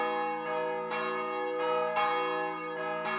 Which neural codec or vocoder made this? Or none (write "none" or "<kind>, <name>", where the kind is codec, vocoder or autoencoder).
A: none